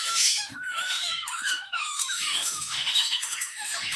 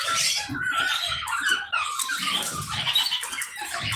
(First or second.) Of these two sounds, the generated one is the first